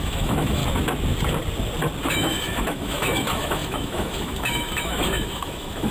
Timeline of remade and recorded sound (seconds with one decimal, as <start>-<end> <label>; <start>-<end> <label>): 0.0-0.6 remade; 0.6-2.1 recorded; 2.1-5.9 remade

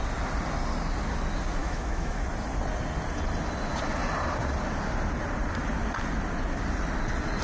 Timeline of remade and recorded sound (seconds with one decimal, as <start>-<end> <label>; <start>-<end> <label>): 0.0-1.6 recorded; 1.6-2.2 remade; 2.2-7.4 recorded

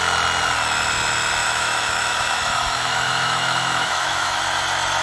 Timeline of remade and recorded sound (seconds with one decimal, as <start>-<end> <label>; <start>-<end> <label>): 0.0-1.4 recorded; 1.4-4.4 remade; 4.4-5.0 recorded

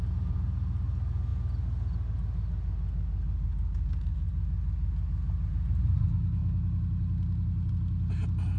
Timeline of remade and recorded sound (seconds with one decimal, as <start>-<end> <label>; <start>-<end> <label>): 0.0-8.6 recorded

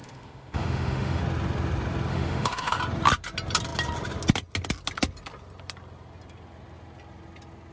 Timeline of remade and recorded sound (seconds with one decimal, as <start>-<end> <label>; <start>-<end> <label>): 0.0-1.2 remade; 1.2-2.1 recorded; 2.1-2.8 remade; 2.8-7.7 recorded

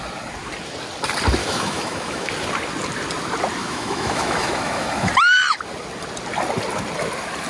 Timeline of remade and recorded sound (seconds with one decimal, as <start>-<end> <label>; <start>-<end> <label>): 0.0-1.4 recorded; 1.4-2.3 remade; 2.3-3.6 recorded; 3.6-5.1 remade; 5.1-7.5 recorded

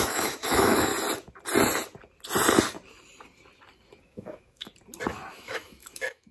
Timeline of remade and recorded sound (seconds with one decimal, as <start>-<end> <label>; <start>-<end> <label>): 0.0-0.9 remade; 0.9-4.0 recorded; 4.0-4.7 remade; 4.7-5.3 recorded; 5.3-6.3 remade

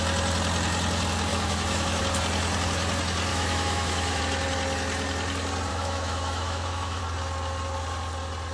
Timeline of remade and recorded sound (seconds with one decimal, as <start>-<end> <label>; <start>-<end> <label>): 0.0-1.3 recorded; 1.3-2.0 remade; 2.0-3.3 recorded; 3.3-4.2 remade; 4.2-5.7 recorded; 5.7-7.0 remade; 7.0-8.5 recorded